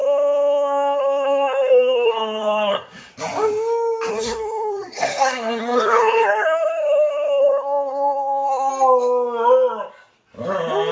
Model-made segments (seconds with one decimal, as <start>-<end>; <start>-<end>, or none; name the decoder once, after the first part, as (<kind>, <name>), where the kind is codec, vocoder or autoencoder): 0.0-3.1 (codec, SNAC); 4.1-8.7

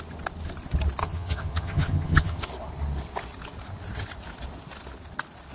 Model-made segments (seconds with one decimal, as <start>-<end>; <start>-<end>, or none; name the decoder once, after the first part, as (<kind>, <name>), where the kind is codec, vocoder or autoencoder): 1.0-2.4 (vocoder, HiFi-GAN)

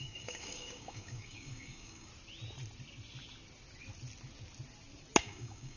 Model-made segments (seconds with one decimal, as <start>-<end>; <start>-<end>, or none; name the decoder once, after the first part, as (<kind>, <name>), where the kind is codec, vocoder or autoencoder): 0.0-2.1 (codec, DAC); 5.2-5.8

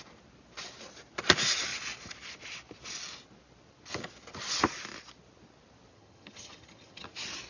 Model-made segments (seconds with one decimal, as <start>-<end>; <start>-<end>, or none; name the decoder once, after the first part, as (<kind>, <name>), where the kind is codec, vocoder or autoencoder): 5.9-7.1 (vocoder, HiFi-GAN)

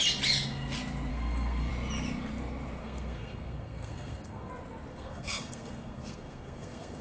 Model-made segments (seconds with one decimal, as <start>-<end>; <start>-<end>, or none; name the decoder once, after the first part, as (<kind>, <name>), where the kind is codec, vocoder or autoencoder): 1.1-1.7 (codec, SNAC); 2.8-4.5; 4.9-7.0